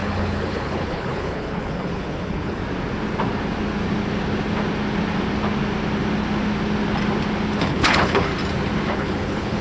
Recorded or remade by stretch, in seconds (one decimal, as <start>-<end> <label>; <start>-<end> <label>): 0.0-2.6 remade; 2.6-7.6 recorded; 7.6-8.3 remade; 8.3-8.9 recorded; 8.9-9.6 remade